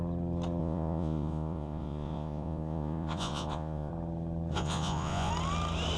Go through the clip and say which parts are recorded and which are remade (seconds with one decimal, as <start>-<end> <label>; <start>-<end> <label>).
0.0-0.6 recorded; 0.6-3.9 remade; 3.9-4.5 recorded; 4.5-5.3 remade; 5.3-6.0 recorded